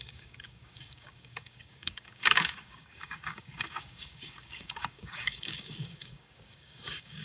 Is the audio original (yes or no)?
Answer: no